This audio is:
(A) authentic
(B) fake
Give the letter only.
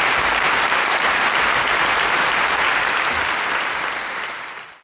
B